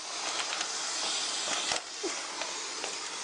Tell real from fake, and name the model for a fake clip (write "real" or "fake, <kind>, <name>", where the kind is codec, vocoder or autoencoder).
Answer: real